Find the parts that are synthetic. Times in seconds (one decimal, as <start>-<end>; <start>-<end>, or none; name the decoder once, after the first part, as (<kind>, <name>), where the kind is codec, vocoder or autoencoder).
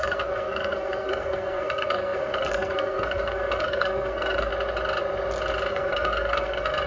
0.0-4.5 (codec, SNAC); 5.7-6.9